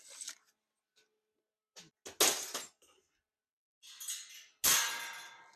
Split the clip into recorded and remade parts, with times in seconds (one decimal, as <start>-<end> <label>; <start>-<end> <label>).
0.0-5.6 recorded